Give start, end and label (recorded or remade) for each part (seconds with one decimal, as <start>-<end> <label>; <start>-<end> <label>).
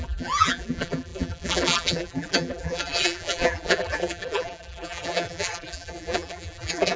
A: 0.0-7.0 remade